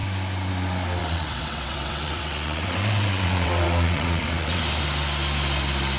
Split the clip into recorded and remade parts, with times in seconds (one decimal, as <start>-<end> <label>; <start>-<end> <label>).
0.0-1.0 recorded; 1.0-4.6 remade; 4.6-6.0 recorded